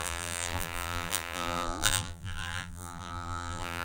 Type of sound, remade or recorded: remade